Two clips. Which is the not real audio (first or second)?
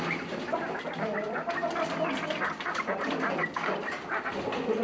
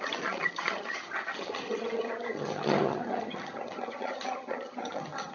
second